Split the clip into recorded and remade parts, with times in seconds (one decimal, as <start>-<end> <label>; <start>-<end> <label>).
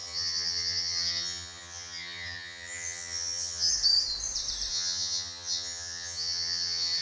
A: 0.0-3.7 remade; 3.7-4.7 recorded; 4.7-7.0 remade